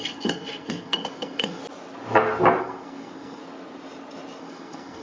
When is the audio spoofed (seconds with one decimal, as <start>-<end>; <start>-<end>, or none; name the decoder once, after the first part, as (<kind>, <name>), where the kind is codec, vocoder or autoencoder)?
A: 0.0-1.6 (codec, SNAC); 2.6-3.4; 4.4-5.0